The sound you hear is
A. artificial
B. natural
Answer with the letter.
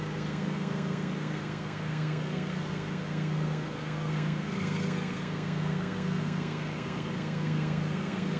A